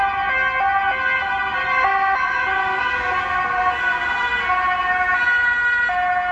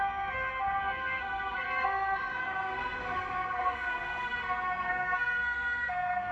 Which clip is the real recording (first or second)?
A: first